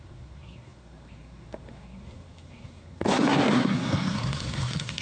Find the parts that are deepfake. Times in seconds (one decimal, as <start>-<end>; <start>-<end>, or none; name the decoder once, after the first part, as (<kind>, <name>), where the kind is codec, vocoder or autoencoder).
0.0-5.0 (codec, SNAC)